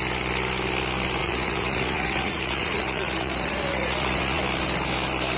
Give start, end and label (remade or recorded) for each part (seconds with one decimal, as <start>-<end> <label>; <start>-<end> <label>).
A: 0.0-1.2 recorded; 1.2-4.4 remade; 4.4-5.4 recorded